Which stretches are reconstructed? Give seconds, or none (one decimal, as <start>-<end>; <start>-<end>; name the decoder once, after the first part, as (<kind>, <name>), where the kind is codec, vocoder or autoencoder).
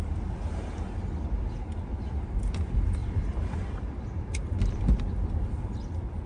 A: 3.0-6.3 (vocoder, BigVGAN v2)